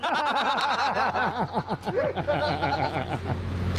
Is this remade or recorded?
recorded